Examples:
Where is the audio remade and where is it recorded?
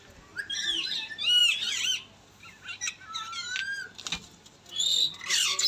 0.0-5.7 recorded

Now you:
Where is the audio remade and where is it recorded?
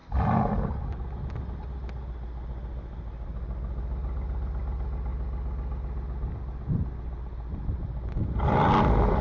0.0-9.2 recorded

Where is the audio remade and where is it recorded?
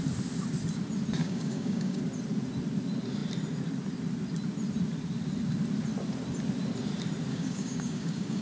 0.0-1.2 recorded; 1.2-2.0 remade; 2.0-7.3 recorded; 7.3-8.4 remade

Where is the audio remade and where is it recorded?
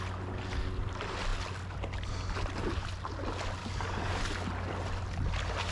0.0-3.6 recorded; 3.6-4.2 remade; 4.2-5.7 recorded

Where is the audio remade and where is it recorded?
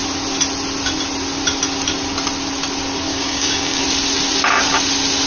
0.0-3.1 recorded; 3.1-3.8 remade; 3.8-5.3 recorded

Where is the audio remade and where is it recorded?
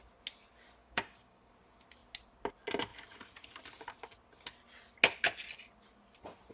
0.0-0.8 recorded; 0.8-1.5 remade; 1.5-6.5 recorded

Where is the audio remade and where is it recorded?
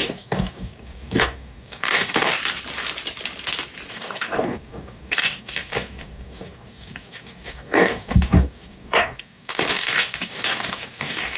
0.0-2.4 remade; 2.4-3.9 recorded; 3.9-11.4 remade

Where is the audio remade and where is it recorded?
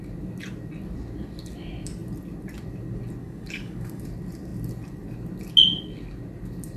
0.0-3.2 recorded; 3.2-4.0 remade; 4.0-6.8 recorded